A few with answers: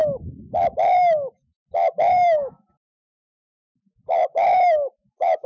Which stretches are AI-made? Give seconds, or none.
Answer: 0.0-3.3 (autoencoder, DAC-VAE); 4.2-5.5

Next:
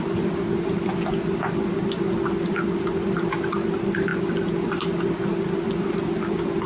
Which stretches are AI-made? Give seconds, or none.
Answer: none

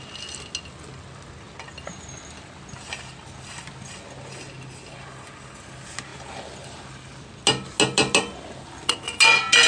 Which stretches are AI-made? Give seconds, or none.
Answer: none

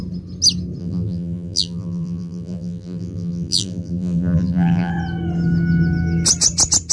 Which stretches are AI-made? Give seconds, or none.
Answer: 0.8-4.9 (vocoder, BigVGAN v2)

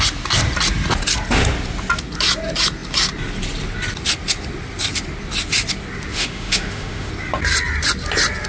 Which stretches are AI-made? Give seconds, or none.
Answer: 6.1-7.1 (autoencoder, DAC-VAE)

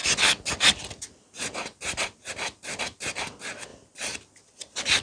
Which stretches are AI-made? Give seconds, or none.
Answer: none

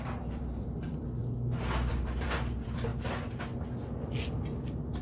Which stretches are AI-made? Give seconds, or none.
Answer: 0.0-1.2 (vocoder, BigVGAN v2); 1.9-2.9